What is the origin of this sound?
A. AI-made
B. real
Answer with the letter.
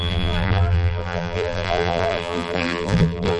A